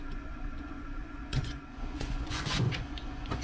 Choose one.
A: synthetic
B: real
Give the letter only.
A